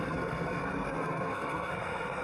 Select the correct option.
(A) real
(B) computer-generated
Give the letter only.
B